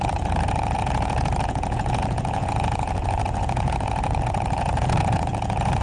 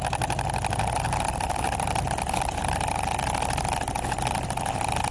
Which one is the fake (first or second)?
first